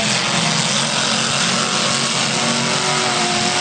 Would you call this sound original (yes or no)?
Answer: yes